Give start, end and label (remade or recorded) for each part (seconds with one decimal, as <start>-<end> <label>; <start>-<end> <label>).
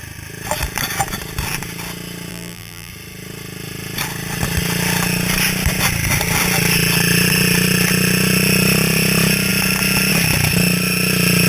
0.0-2.3 recorded; 2.3-2.9 remade; 2.9-11.5 recorded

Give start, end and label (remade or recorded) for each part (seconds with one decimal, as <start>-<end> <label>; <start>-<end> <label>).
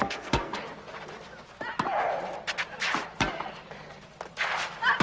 0.0-0.6 remade; 0.6-5.0 recorded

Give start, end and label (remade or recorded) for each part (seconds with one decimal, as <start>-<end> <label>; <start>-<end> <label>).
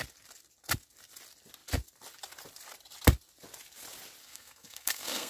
0.0-4.2 recorded; 4.2-5.3 remade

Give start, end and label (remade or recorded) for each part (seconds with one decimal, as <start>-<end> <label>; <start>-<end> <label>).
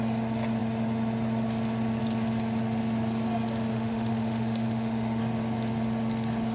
0.0-3.7 recorded; 3.7-5.2 remade; 5.2-6.5 recorded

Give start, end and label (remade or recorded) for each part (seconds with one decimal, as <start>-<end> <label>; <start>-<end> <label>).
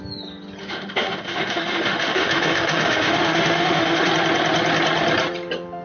0.0-0.6 recorded; 0.6-4.1 remade; 4.1-5.8 recorded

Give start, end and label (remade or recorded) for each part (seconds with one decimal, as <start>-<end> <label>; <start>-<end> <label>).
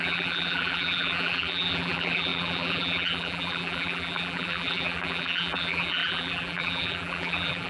0.0-7.7 remade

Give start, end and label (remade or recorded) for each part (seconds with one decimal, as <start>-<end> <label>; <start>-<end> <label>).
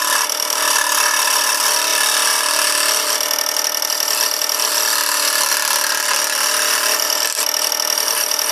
0.0-8.5 recorded